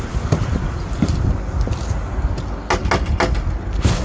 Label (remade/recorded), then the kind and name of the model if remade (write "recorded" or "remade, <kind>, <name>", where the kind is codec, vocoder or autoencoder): recorded